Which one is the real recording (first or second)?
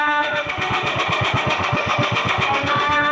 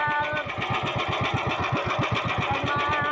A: second